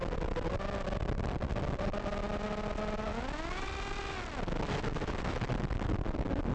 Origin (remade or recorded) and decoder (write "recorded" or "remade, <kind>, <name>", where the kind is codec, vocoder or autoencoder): recorded